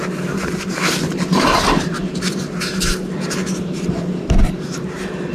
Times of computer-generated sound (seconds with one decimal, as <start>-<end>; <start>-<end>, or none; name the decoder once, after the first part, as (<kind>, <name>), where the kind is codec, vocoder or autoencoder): 0.0-5.3 (vocoder, BigVGAN v2)